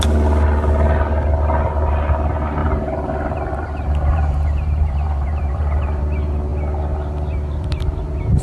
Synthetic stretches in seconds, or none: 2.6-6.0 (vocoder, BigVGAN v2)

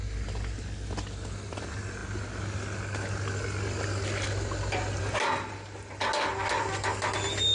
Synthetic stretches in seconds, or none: none